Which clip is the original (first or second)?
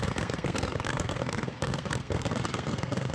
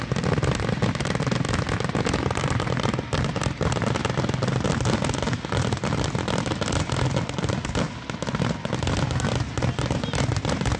second